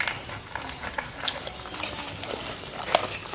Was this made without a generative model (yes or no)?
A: yes